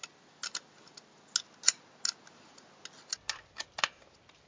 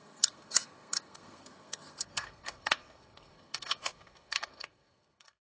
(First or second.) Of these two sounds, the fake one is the second